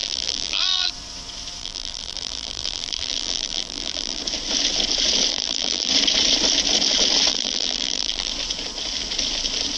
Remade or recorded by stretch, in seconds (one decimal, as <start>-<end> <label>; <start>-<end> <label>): 0.0-0.9 remade; 0.9-1.6 recorded; 1.6-4.2 remade; 4.2-5.3 recorded; 5.3-5.9 remade; 5.9-7.3 recorded; 7.3-8.3 remade; 8.3-9.8 recorded